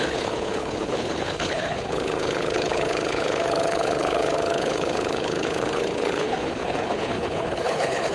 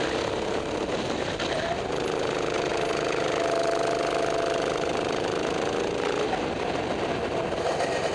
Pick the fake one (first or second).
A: first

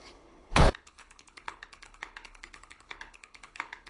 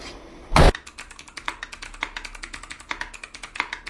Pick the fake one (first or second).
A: first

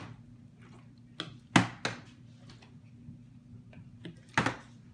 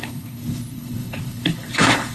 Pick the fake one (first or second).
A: second